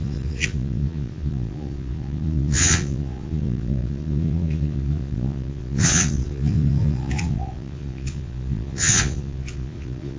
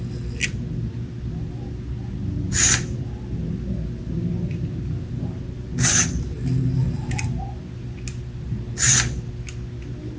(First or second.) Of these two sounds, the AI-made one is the first